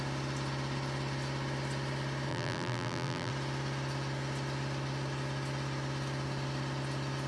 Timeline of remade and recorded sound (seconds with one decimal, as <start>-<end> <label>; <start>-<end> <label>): 0.0-2.3 recorded; 2.3-3.3 remade; 3.3-7.3 recorded